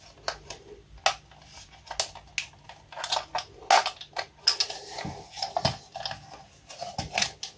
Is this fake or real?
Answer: real